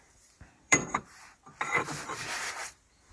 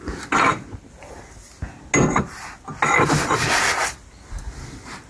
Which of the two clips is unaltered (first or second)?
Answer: second